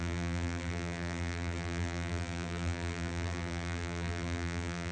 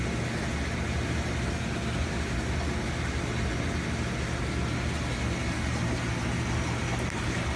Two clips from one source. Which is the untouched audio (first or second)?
second